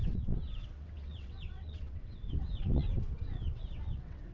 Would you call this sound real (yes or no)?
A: no